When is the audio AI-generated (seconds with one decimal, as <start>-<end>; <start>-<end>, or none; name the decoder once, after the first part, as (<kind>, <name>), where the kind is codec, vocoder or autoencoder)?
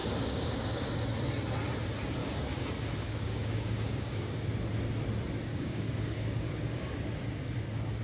0.0-1.0 (codec, DAC); 2.2-4.5; 5.5-7.0